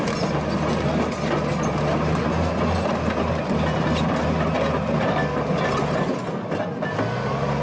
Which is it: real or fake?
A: real